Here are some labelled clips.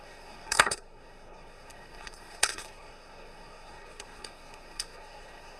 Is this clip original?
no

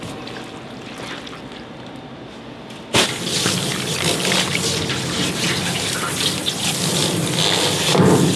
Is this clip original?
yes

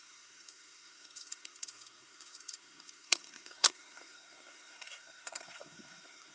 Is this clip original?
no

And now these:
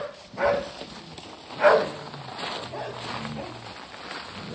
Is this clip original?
yes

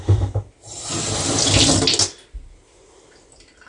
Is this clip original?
yes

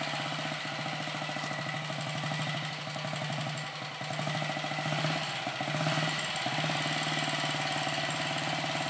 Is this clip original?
yes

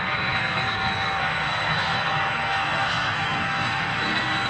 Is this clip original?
no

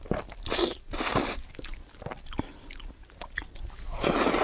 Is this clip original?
yes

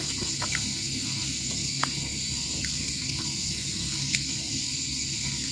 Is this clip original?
no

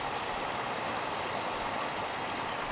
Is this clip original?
yes